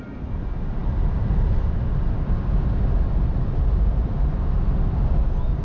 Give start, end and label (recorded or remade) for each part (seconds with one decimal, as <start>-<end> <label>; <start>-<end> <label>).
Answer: 0.0-5.6 recorded